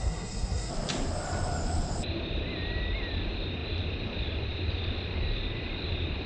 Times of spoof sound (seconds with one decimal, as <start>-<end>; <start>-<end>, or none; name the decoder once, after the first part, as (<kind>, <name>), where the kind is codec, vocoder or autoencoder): 0.0-0.7 (codec, SNAC)